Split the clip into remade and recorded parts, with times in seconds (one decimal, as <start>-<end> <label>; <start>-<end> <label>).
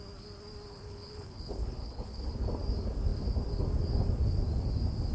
0.0-0.7 recorded; 0.7-2.3 remade; 2.3-5.1 recorded